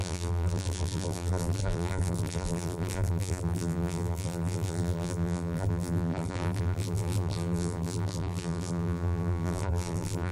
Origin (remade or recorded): remade